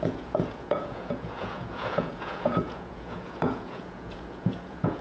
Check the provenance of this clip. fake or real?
fake